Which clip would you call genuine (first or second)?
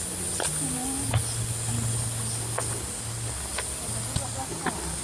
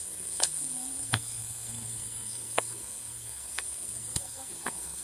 first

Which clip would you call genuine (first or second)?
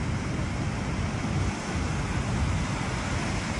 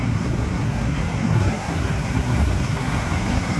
first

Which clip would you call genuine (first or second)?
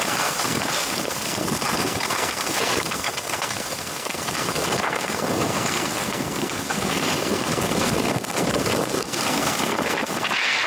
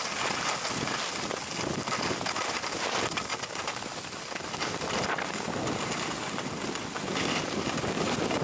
second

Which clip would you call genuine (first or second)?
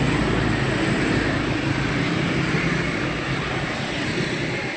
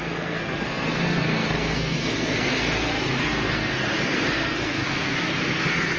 first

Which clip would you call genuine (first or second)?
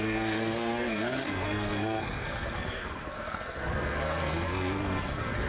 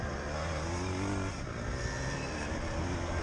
second